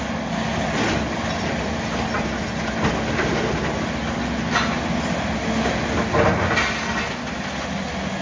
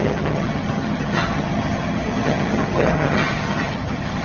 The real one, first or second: first